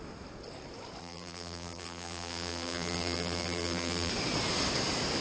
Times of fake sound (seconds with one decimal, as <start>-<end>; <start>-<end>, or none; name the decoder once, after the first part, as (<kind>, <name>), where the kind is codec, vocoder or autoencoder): 1.0-4.1 (vocoder, BigVGAN v2)